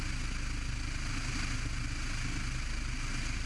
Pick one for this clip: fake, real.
real